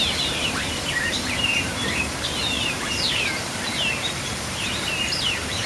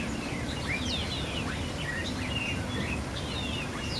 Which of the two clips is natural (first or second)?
second